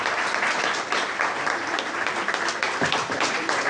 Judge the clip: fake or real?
real